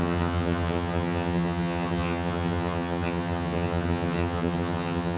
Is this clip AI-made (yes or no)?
yes